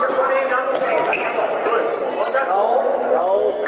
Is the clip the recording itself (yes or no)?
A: yes